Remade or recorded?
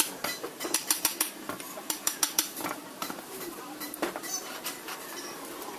remade